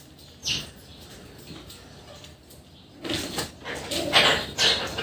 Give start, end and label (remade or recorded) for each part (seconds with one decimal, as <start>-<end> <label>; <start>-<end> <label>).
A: 0.0-5.0 recorded